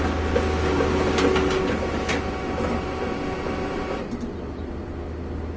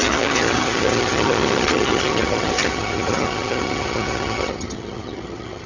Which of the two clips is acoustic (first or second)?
first